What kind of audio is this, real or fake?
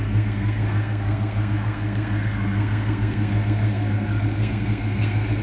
fake